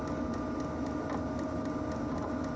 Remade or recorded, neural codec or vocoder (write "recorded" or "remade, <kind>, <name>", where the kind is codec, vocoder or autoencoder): recorded